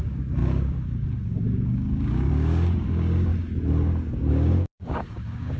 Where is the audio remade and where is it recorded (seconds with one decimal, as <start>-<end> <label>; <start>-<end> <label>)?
0.0-3.3 remade; 3.3-4.3 recorded; 4.3-5.6 remade